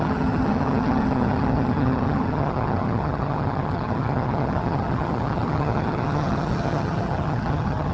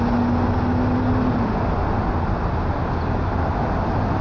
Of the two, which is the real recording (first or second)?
second